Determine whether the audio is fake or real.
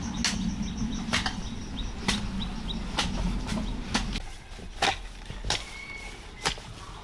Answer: real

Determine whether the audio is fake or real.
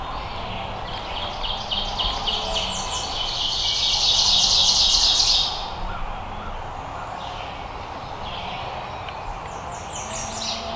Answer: real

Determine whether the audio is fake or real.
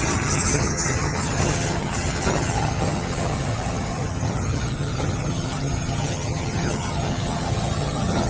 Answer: fake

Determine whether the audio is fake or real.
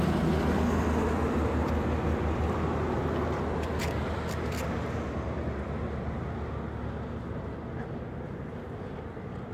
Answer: real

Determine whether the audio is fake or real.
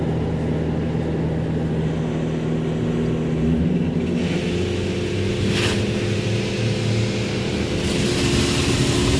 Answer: real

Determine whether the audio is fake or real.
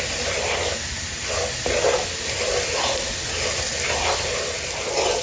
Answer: real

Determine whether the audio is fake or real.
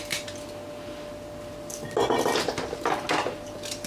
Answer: real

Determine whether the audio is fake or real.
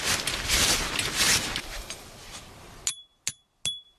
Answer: real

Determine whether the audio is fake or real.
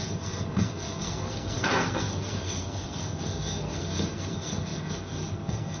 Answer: fake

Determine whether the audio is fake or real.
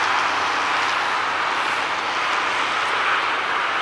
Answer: real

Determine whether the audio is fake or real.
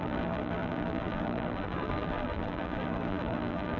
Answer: fake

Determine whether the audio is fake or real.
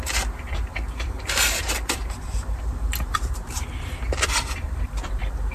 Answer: fake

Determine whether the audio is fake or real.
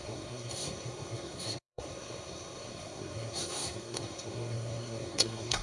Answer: fake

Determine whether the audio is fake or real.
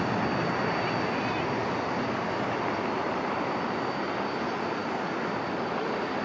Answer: real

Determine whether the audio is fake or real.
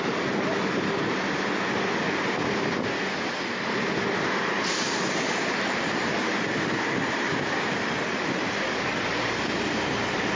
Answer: fake